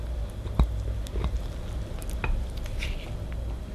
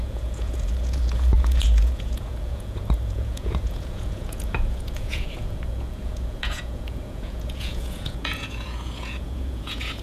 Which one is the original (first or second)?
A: first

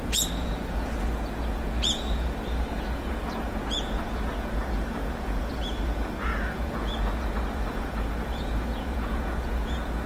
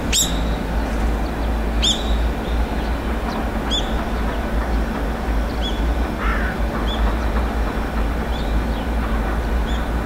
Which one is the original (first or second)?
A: second